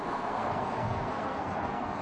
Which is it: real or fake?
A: fake